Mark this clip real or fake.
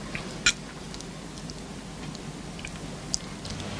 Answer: real